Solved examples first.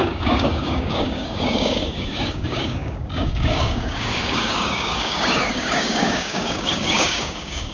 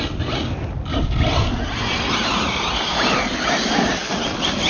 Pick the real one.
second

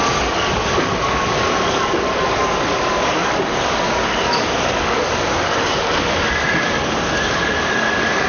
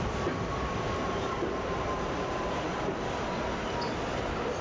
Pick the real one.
second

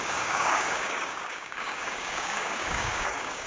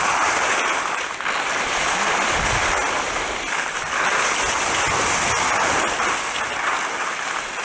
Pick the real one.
second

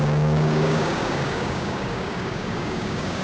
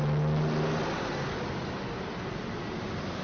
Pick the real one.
second